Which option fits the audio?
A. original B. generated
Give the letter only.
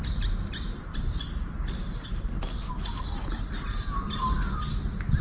A